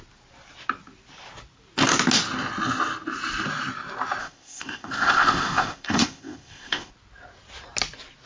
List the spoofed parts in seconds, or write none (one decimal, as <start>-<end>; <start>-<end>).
4.2-6.9